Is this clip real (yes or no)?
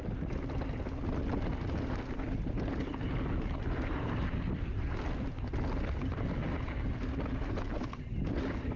yes